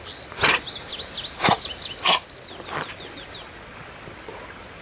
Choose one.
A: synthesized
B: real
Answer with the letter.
B